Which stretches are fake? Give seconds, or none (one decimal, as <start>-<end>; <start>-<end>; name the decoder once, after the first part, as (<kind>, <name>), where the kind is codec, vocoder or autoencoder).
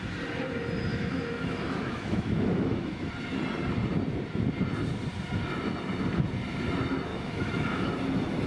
0.9-3.1 (autoencoder, DAC-VAE); 7.1-7.9